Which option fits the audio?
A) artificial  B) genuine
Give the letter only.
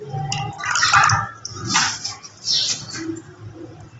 B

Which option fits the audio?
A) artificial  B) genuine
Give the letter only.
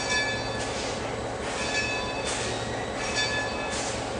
B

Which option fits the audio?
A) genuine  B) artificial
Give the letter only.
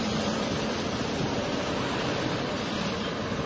A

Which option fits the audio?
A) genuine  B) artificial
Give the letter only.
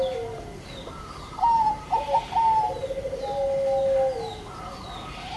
A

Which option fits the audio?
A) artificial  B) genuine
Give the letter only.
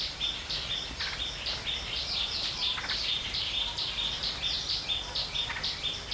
B